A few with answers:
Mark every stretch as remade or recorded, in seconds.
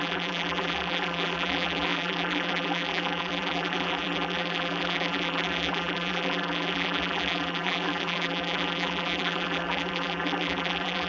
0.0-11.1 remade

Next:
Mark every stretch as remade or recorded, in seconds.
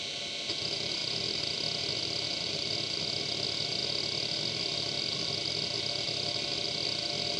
0.0-7.4 recorded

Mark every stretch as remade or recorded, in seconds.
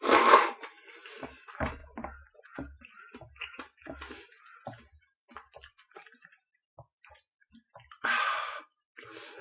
0.0-9.4 recorded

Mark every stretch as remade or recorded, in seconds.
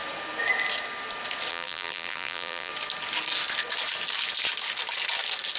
0.0-1.5 recorded; 1.5-2.7 remade; 2.7-5.6 recorded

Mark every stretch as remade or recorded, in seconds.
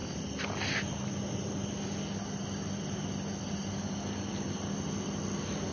0.0-1.7 remade; 1.7-5.7 recorded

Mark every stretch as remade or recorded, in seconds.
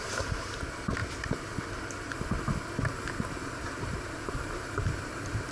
0.0-3.4 recorded; 3.4-5.5 remade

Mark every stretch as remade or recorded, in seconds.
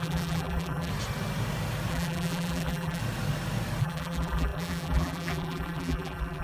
0.0-0.9 remade; 0.9-1.9 recorded; 1.9-3.0 remade; 3.0-3.8 recorded; 3.8-6.4 remade